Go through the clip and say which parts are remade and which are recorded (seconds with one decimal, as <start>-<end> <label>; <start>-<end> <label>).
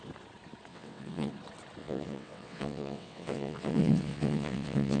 0.0-0.7 recorded; 0.7-1.3 remade; 1.3-1.8 recorded; 1.8-5.0 remade